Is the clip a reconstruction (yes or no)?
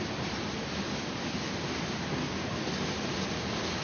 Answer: no